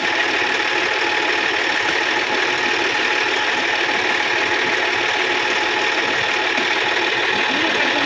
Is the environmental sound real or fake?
real